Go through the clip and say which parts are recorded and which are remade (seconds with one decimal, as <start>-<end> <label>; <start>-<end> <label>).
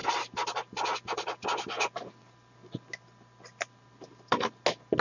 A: 0.0-5.0 recorded